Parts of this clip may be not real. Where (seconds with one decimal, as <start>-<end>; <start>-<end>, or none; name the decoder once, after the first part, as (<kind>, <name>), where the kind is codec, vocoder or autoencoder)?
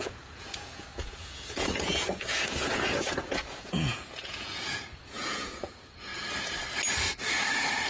0.0-6.1 (vocoder, Vocos)